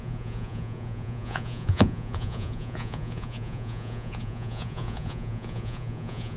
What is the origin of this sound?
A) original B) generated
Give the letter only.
B